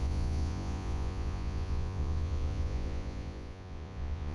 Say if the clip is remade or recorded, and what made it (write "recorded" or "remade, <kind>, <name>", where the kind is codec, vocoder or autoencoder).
remade, vocoder, Vocos